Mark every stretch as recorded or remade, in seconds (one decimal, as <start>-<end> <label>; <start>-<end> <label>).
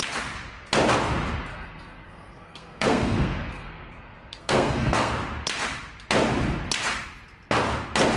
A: 0.0-1.5 recorded; 1.5-5.1 remade; 5.1-8.2 recorded